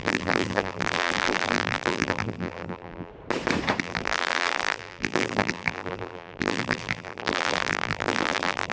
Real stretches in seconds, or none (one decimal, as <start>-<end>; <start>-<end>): 3.1-3.8